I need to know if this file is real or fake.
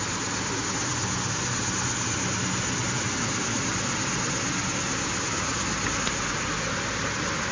real